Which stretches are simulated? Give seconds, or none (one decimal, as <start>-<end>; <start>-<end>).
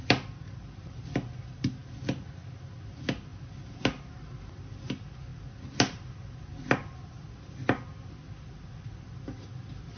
none